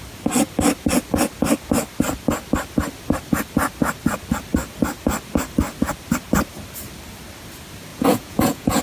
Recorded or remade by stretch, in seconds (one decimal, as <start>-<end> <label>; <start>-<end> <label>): 0.0-7.9 recorded; 7.9-8.8 remade